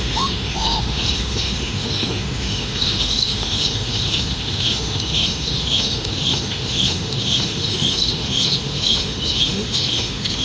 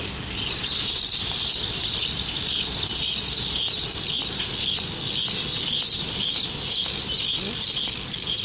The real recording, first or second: second